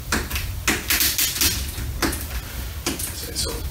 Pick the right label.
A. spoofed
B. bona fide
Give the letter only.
B